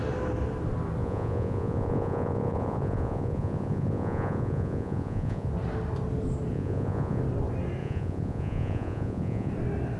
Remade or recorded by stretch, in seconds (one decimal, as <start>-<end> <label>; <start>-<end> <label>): 0.0-1.0 recorded; 1.0-5.5 remade; 5.5-6.5 recorded; 6.5-7.2 remade; 7.2-7.8 recorded; 7.8-9.5 remade; 9.5-10.0 recorded